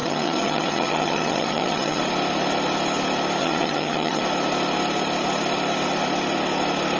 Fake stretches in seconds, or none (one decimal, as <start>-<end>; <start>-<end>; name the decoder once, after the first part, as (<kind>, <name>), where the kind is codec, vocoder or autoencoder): 0.0-2.0 (vocoder, HiFi-GAN); 3.4-4.2

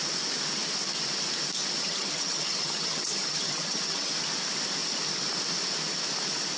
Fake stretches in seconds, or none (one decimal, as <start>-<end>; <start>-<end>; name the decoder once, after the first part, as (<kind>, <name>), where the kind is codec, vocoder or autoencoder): 1.8-4.1 (vocoder, HiFi-GAN)

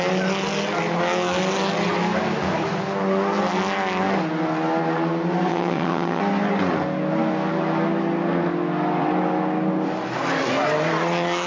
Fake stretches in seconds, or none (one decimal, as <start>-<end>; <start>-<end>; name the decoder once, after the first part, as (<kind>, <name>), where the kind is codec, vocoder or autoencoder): 5.5-6.2 (vocoder, HiFi-GAN)

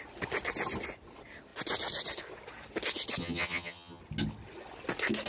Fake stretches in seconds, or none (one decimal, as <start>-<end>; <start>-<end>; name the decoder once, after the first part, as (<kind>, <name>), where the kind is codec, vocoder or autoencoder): 3.2-4.0 (vocoder, HiFi-GAN)

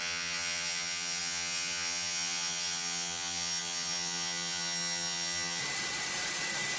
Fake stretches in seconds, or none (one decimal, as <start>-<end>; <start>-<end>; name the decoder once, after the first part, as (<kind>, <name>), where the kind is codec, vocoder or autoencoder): 0.0-5.6 (vocoder, HiFi-GAN)

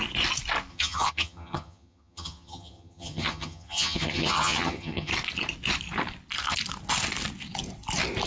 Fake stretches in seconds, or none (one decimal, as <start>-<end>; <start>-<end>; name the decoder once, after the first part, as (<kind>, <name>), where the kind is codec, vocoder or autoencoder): 0.7-5.1 (vocoder, HiFi-GAN)

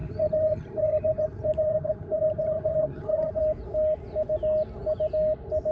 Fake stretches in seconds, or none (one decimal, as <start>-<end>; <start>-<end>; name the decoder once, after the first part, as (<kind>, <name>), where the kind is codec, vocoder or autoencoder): 0.0-3.4 (vocoder, HiFi-GAN)